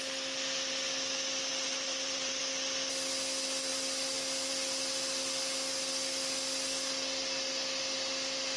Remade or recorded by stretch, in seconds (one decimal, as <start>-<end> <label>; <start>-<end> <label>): 0.0-1.5 recorded; 1.5-2.4 remade; 2.4-8.6 recorded

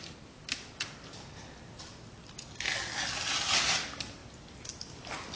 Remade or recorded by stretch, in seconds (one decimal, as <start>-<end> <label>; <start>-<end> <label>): 0.0-5.4 recorded

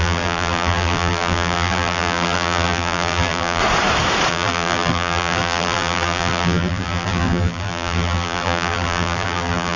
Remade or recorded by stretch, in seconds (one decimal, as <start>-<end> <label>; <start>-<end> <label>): 0.0-3.6 remade; 3.6-4.3 recorded; 4.3-9.8 remade